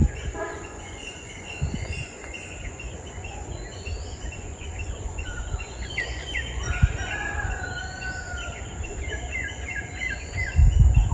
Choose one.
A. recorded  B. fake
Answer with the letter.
B